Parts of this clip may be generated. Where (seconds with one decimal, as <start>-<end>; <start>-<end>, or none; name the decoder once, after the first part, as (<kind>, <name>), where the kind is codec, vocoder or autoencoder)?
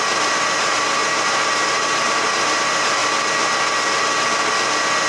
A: 0.0-3.0 (vocoder, BigVGAN v2)